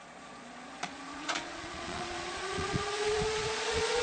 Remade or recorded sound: remade